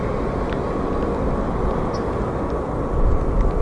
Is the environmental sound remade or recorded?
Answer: recorded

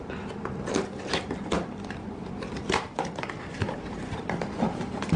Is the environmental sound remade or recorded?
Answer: remade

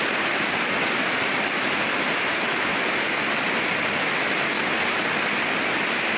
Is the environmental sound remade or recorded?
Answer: remade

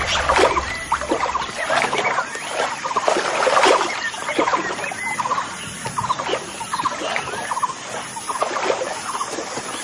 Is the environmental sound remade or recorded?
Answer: recorded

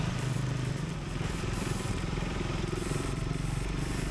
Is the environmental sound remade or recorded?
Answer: remade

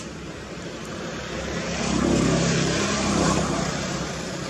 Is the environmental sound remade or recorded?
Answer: remade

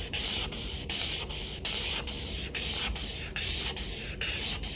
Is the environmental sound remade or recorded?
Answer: remade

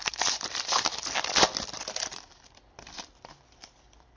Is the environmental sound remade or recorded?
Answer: remade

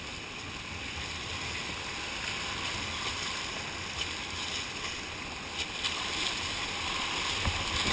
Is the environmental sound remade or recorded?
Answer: recorded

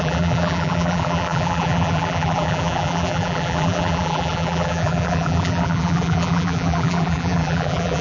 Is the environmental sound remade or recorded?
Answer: remade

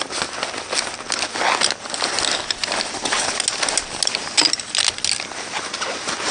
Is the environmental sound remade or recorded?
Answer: recorded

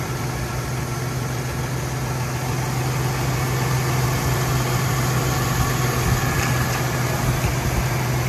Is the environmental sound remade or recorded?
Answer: recorded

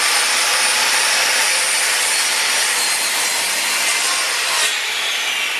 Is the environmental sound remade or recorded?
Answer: recorded